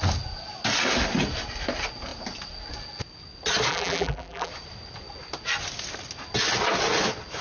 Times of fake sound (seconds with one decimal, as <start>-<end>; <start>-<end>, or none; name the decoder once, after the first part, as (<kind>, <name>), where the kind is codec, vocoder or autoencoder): 3.7-4.5 (vocoder, BigVGAN v2)